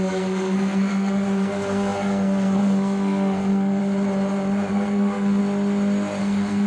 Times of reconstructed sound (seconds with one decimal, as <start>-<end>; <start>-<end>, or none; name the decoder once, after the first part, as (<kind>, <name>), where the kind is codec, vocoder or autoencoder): 0.0-3.8 (codec, SNAC); 4.7-5.4; 6.2-6.7